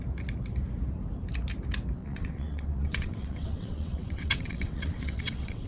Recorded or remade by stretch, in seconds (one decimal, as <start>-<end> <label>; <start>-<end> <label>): 0.0-2.0 recorded; 2.0-5.7 remade